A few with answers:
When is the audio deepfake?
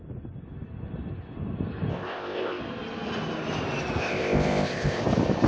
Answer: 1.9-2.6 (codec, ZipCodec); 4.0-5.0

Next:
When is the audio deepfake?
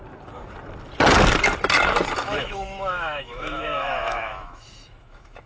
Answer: 2.2-5.5 (autoencoder, DAC-VAE)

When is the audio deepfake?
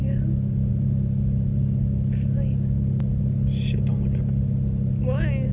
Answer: none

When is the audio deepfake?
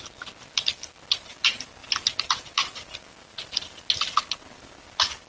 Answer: none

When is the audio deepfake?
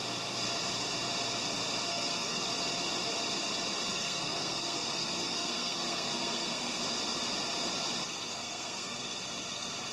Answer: 1.9-2.4 (codec, SNAC); 3.9-6.8; 8.3-9.2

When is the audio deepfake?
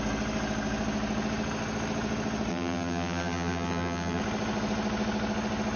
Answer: 2.5-4.2 (vocoder, BigVGAN v2)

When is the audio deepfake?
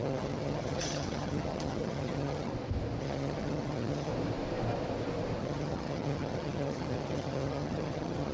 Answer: 0.0-2.5 (vocoder, HiFi-GAN); 3.0-4.1; 5.4-8.3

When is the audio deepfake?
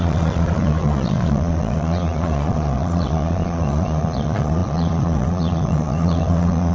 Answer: 0.0-6.7 (vocoder, Vocos)